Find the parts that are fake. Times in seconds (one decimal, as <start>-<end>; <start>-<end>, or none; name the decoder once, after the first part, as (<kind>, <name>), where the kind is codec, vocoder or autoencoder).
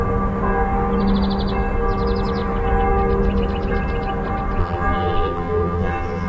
4.6-6.3 (vocoder, BigVGAN v2)